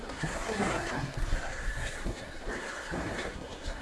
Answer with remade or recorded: remade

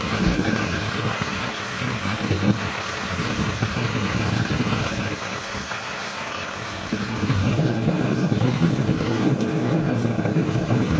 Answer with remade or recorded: remade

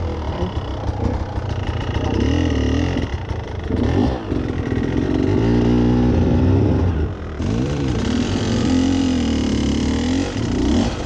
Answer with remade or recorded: remade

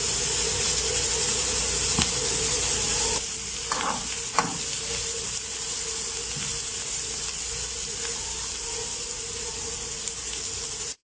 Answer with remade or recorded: recorded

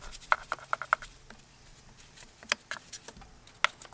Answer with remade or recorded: recorded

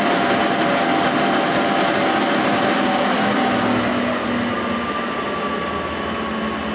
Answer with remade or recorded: recorded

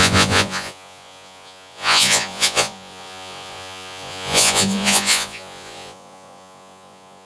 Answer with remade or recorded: remade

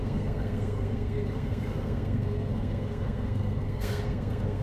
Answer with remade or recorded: remade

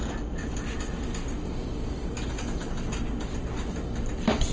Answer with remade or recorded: recorded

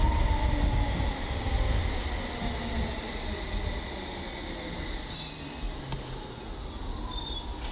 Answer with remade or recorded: recorded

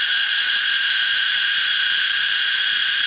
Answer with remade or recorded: remade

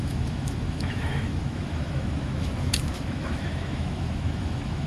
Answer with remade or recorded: remade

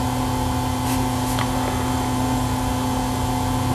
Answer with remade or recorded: recorded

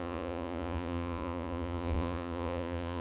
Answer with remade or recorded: remade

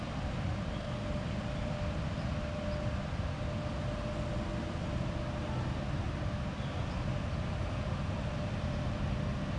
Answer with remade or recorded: recorded